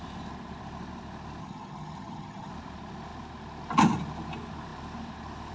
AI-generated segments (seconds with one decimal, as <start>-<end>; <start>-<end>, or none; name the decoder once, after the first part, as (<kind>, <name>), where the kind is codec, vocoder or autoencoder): 1.4-2.5 (vocoder, HiFi-GAN)

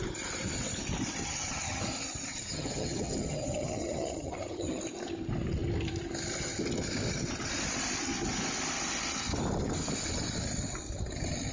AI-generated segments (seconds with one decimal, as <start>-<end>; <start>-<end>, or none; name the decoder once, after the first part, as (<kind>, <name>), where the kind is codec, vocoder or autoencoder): 1.2-1.8 (vocoder, HiFi-GAN); 2.3-4.8

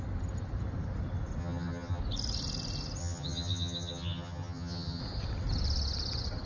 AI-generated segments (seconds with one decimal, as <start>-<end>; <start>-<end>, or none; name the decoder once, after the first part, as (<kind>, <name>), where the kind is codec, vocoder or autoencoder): 1.4-2.0 (vocoder, HiFi-GAN); 3.0-5.0

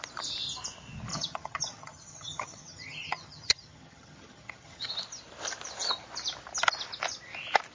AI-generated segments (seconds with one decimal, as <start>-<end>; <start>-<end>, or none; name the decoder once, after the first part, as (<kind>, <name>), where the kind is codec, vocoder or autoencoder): 1.1-4.9 (vocoder, HiFi-GAN)

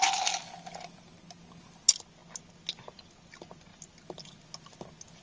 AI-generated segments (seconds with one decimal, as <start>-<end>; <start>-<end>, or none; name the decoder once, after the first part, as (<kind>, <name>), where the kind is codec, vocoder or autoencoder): none

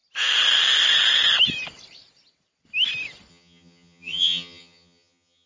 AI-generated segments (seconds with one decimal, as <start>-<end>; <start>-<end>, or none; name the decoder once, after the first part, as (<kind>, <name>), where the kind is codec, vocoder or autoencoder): 3.3-5.5 (vocoder, HiFi-GAN)

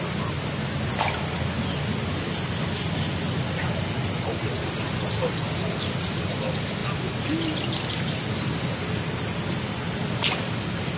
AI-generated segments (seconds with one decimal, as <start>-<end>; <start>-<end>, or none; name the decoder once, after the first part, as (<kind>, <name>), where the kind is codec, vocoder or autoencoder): none